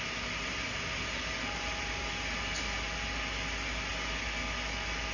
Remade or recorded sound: recorded